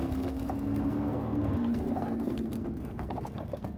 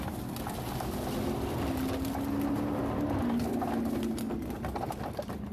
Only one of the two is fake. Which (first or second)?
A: first